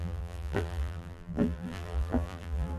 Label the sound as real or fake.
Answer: fake